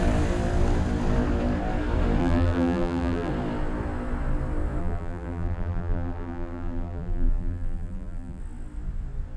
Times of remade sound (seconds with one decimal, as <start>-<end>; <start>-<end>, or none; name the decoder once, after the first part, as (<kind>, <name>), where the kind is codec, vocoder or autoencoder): 2.2-3.3 (vocoder, BigVGAN v2); 4.8-8.4